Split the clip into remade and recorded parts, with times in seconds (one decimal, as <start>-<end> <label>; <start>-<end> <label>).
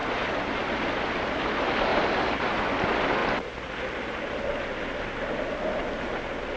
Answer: 0.0-0.6 remade; 0.6-1.9 recorded; 1.9-2.6 remade; 2.6-6.6 recorded